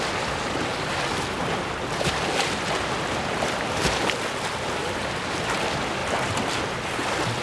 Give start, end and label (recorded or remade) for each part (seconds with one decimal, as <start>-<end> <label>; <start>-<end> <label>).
0.0-7.4 recorded